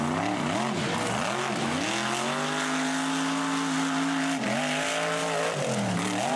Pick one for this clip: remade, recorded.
recorded